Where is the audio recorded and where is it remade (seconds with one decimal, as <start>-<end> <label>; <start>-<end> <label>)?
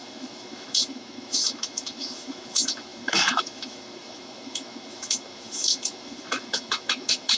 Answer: 0.0-7.4 remade